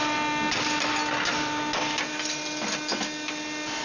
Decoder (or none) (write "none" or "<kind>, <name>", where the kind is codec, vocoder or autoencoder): none